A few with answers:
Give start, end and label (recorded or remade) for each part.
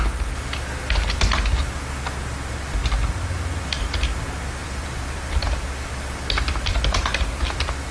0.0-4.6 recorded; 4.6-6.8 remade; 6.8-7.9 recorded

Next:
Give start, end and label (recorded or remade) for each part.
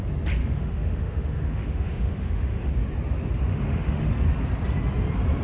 0.0-0.4 recorded; 0.4-2.7 remade; 2.7-3.5 recorded; 3.5-4.1 remade; 4.1-5.4 recorded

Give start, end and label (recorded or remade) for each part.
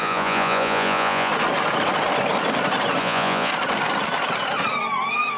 0.0-1.3 remade; 1.3-3.0 recorded; 3.0-3.5 remade; 3.5-5.4 recorded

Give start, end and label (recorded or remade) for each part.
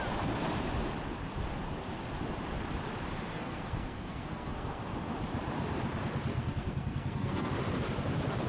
0.0-3.3 recorded; 3.3-4.8 remade; 4.8-6.3 recorded; 6.3-7.5 remade; 7.5-8.5 recorded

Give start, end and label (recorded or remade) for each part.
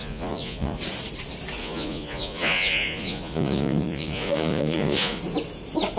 0.0-0.8 remade; 0.8-1.6 recorded; 1.6-5.2 remade; 5.2-6.0 recorded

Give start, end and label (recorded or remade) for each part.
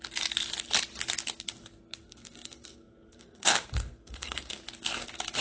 0.0-2.0 recorded; 2.0-4.6 remade; 4.6-5.4 recorded